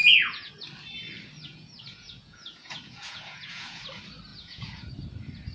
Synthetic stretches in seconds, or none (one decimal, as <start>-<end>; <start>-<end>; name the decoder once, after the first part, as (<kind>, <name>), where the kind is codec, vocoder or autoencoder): 0.0-0.5 (vocoder, Vocos); 1.5-3.8; 4.3-4.9